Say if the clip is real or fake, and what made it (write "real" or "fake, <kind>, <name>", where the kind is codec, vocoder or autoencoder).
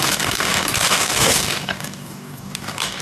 fake, codec, DAC